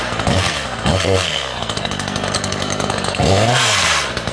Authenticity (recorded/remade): remade